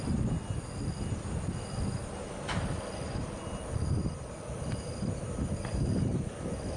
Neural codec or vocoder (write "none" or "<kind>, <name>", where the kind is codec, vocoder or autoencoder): none